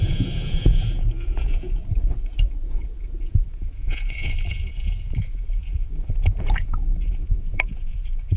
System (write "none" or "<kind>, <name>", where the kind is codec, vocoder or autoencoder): vocoder, Vocos